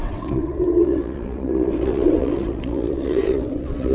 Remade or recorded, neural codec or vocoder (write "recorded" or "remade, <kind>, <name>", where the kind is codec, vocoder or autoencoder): remade, vocoder, WaveNeXt